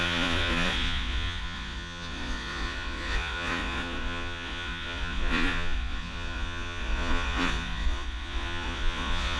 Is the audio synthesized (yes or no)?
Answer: yes